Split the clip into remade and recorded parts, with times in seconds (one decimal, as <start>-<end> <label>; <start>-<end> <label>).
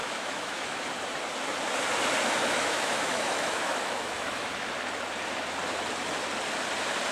0.0-0.8 remade; 0.8-2.4 recorded; 2.4-4.7 remade; 4.7-7.1 recorded